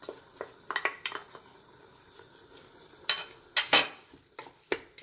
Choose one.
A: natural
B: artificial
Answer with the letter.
A